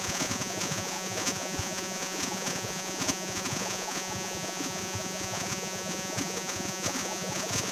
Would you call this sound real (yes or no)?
no